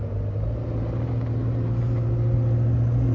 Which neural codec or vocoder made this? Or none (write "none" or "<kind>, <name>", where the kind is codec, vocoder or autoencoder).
none